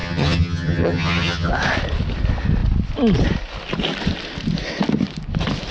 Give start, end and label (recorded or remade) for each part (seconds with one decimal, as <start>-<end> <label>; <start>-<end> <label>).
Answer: 0.0-1.5 remade; 1.5-5.7 recorded